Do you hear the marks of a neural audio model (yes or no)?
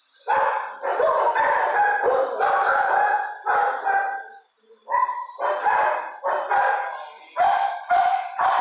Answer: no